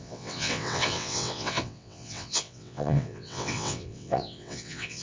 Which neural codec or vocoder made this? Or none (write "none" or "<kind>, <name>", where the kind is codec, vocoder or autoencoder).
vocoder, WaveNeXt